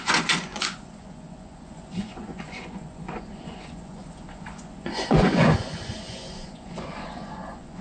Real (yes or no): no